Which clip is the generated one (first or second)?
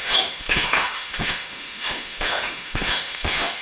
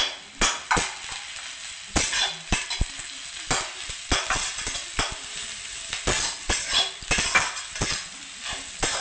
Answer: first